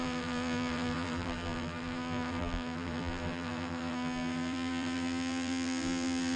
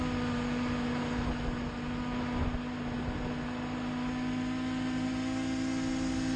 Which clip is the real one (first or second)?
second